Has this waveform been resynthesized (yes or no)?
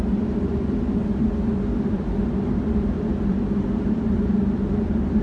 yes